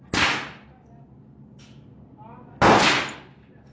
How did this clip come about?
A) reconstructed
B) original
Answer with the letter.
B